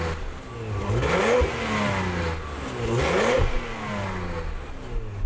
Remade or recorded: recorded